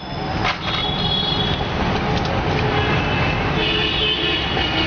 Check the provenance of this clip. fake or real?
real